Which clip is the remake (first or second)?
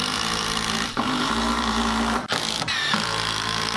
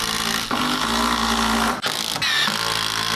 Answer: first